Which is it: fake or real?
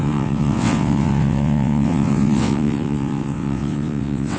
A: fake